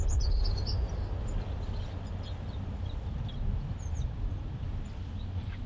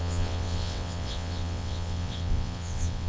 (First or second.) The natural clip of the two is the first